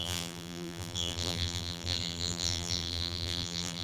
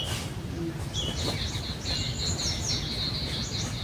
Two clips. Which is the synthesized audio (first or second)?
first